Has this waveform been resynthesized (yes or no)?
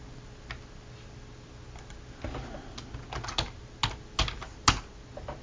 no